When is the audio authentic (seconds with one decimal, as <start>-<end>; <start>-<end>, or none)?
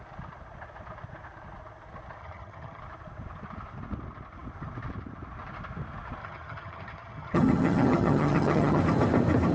0.0-2.2; 2.8-6.2; 8.8-9.5